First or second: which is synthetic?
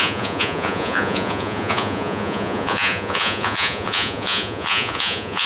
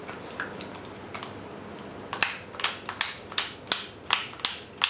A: first